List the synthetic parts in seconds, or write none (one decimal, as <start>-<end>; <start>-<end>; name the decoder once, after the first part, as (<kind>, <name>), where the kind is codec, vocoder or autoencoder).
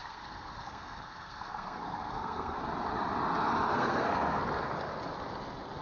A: 0.0-2.6 (codec, SNAC); 3.7-4.4